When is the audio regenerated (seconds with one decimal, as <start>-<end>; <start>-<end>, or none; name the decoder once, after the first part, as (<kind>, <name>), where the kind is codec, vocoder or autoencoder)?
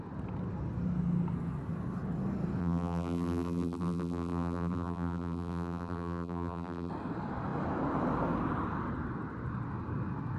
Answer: 2.6-6.9 (vocoder, BigVGAN v2)